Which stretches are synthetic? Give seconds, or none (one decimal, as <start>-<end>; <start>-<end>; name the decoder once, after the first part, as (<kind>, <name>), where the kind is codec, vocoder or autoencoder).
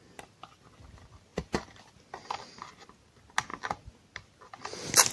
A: none